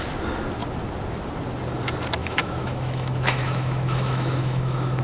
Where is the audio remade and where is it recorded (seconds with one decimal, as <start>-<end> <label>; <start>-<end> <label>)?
0.0-2.2 recorded; 2.2-5.0 remade